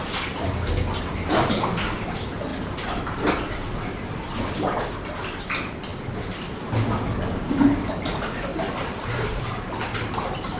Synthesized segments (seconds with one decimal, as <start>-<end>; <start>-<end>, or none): 8.5-9.7